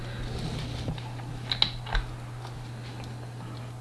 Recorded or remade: recorded